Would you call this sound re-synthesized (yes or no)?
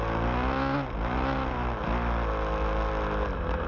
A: no